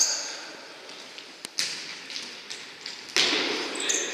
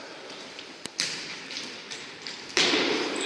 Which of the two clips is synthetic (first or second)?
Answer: second